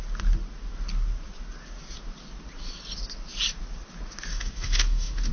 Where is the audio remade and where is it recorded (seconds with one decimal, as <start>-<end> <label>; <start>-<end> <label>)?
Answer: 0.0-4.3 recorded; 4.3-5.3 remade